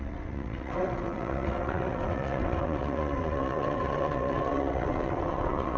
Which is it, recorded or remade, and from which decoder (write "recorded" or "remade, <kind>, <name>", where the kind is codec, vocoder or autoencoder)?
remade, vocoder, WaveNeXt